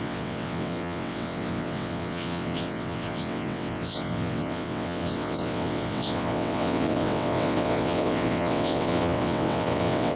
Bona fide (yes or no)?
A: no